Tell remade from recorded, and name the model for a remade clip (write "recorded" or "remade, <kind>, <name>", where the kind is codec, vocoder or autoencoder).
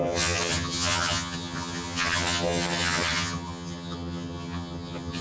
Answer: remade, vocoder, HiFi-GAN